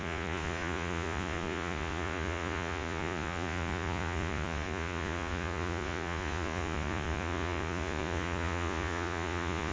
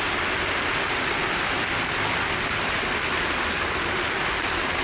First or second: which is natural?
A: second